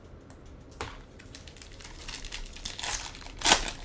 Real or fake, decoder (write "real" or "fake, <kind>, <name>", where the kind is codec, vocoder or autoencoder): real